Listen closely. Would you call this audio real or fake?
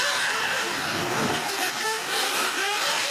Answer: fake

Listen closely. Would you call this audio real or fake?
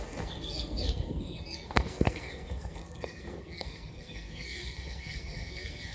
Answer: fake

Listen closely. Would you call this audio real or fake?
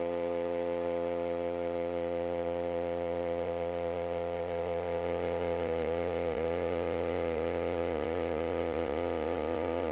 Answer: fake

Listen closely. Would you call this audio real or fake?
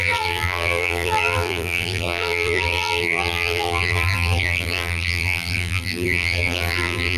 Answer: fake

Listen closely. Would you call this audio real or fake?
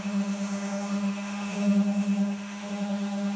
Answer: fake